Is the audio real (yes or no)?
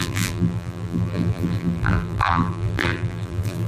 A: no